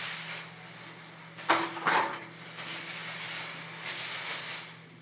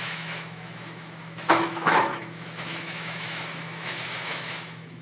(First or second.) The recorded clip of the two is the first